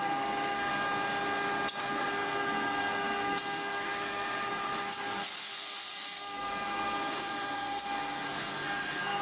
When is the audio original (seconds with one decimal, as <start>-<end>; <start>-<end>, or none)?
0.7-1.8